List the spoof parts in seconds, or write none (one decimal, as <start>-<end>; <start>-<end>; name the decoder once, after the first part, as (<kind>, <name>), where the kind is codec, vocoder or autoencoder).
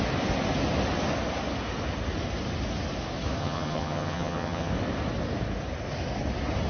3.4-4.7 (vocoder, HiFi-GAN)